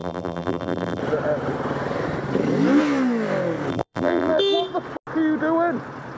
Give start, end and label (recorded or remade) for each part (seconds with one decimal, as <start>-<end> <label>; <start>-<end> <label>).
0.0-1.0 remade; 1.0-3.7 recorded; 3.7-4.4 remade; 4.4-6.2 recorded